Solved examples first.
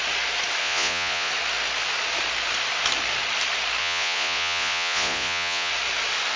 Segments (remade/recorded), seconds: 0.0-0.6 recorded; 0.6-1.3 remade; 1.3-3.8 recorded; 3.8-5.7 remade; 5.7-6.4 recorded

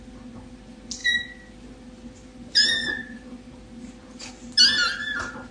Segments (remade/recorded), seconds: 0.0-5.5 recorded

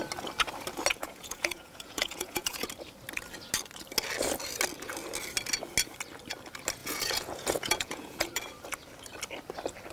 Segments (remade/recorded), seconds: 0.0-0.9 recorded; 0.9-2.7 remade; 2.7-6.8 recorded; 6.8-8.3 remade; 8.3-9.9 recorded

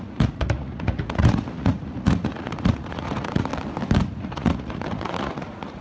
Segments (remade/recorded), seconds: 0.0-3.5 remade; 3.5-4.2 recorded; 4.2-5.8 remade

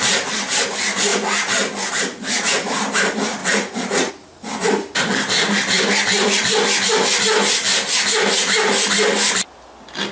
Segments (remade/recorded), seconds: 0.0-3.4 recorded; 3.4-4.1 remade; 4.1-10.1 recorded

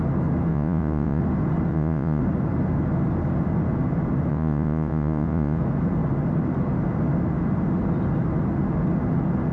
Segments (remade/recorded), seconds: 0.0-0.5 recorded; 0.5-1.2 remade; 1.2-1.7 recorded; 1.7-2.2 remade; 2.2-4.3 recorded; 4.3-5.6 remade; 5.6-9.5 recorded

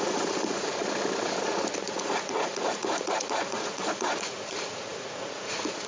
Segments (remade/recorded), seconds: 0.0-0.7 remade; 0.7-1.8 recorded; 1.8-5.9 remade